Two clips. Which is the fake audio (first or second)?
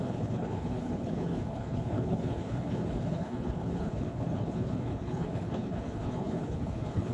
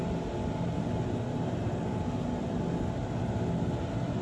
first